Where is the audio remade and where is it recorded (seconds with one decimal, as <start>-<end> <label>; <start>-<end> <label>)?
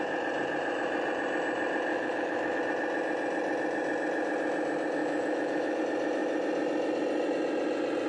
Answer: 0.0-1.9 recorded; 1.9-2.6 remade; 2.6-5.0 recorded; 5.0-5.8 remade; 5.8-8.1 recorded